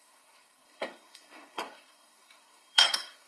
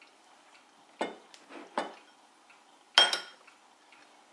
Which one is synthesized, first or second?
first